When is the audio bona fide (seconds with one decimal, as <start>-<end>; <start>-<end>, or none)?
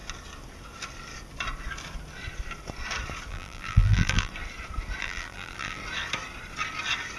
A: 0.0-3.3; 4.3-5.0; 5.8-7.2